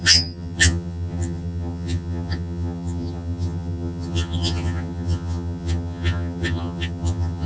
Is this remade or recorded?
remade